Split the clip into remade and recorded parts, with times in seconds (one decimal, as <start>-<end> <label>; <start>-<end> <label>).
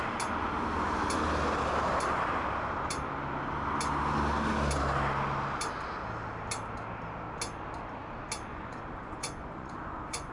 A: 0.0-8.5 recorded; 8.5-10.3 remade